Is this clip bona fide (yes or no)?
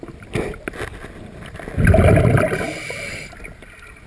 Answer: yes